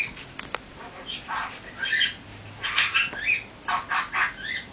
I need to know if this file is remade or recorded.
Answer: recorded